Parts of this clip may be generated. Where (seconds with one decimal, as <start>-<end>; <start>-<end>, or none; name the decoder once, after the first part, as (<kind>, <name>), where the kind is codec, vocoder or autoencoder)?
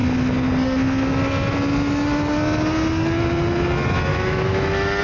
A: 4.1-5.0 (autoencoder, DAC-VAE)